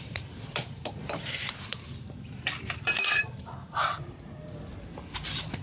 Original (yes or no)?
no